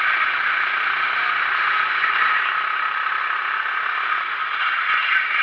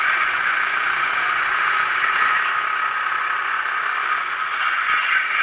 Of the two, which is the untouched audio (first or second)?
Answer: first